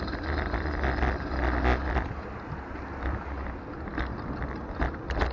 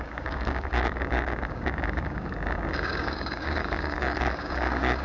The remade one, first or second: second